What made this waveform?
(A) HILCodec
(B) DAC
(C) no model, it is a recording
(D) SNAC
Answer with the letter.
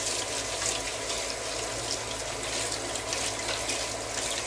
C